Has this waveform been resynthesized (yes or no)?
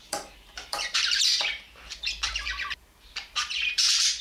yes